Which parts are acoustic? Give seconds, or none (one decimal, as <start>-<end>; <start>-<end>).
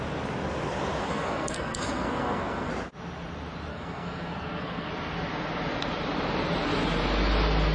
0.0-1.0; 2.7-3.7; 4.9-7.7